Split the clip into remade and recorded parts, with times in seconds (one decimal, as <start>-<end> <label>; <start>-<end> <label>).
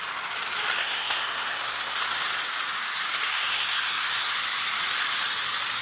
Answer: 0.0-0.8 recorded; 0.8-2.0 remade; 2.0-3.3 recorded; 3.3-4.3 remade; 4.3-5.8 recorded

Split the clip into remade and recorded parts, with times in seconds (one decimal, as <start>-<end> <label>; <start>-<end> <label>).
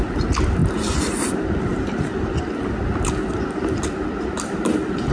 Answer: 0.0-5.1 recorded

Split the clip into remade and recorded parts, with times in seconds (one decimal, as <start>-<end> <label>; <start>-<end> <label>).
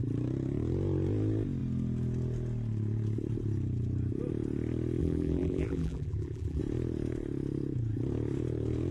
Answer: 0.0-5.0 recorded; 5.0-6.6 remade; 6.6-8.9 recorded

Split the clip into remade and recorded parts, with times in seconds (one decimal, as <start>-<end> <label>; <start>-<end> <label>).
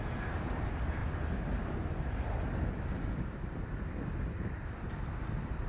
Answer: 0.0-5.7 recorded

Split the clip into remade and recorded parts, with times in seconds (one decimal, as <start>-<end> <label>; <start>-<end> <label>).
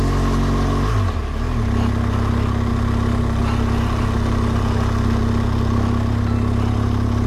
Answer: 0.0-7.3 recorded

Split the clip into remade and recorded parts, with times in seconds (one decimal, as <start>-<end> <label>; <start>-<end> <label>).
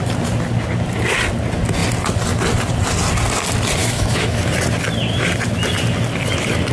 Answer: 0.0-3.8 recorded; 3.8-4.4 remade; 4.4-6.7 recorded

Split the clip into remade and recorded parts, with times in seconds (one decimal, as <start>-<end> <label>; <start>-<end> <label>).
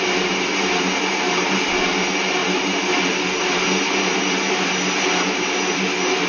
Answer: 0.0-6.3 recorded